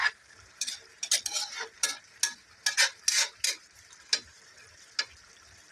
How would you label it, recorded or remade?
recorded